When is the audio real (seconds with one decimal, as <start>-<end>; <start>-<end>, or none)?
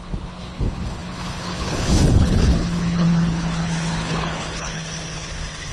none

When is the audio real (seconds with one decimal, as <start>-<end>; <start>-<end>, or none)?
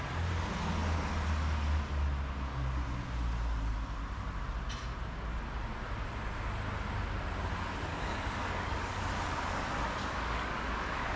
0.0-7.9; 9.0-10.0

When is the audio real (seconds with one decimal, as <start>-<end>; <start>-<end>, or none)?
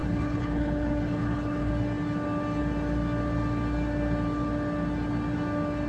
1.7-5.9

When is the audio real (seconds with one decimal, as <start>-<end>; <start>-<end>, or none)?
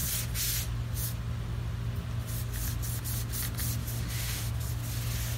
0.0-3.8; 4.5-5.4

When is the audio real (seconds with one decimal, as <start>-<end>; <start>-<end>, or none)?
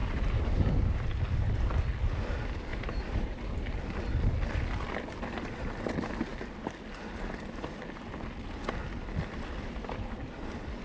1.0-2.7; 3.8-10.8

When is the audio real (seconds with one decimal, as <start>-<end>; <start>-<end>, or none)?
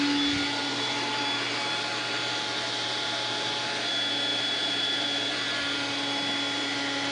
0.0-0.6; 1.2-4.3; 5.3-7.1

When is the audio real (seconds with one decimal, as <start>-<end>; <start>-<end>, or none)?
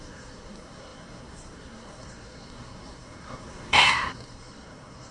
none